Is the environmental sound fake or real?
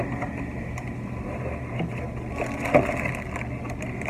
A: real